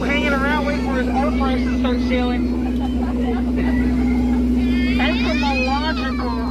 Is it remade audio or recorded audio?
recorded